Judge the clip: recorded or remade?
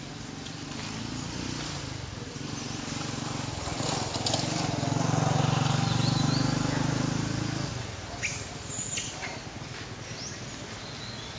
recorded